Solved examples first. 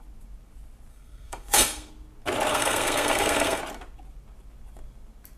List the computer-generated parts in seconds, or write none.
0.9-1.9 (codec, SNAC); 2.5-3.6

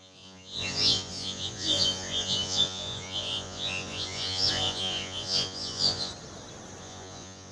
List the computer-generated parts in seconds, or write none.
0.0-6.1 (vocoder, Vocos); 6.8-7.5

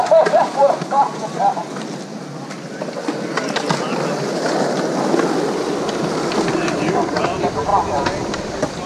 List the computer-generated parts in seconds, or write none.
0.0-1.6 (vocoder, BigVGAN v2); 6.5-8.9

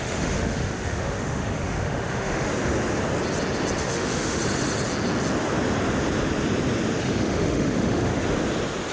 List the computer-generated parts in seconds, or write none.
0.0-2.5 (autoencoder, DAC-VAE); 3.8-4.4; 7.0-8.1

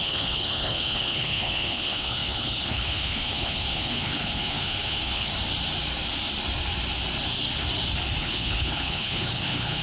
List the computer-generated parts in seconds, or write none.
0.0-5.3 (codec, HILCodec); 8.2-9.8

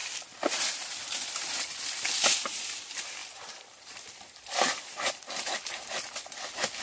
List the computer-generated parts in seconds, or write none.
none